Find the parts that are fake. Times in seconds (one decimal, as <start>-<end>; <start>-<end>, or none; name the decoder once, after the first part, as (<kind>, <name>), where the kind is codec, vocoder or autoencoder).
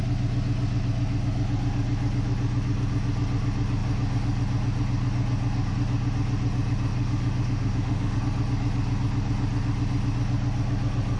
6.9-8.2 (autoencoder, DAC-VAE)